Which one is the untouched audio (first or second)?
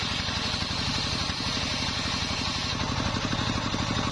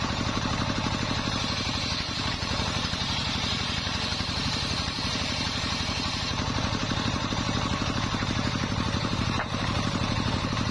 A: first